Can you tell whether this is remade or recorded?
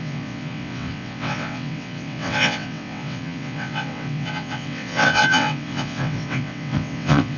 remade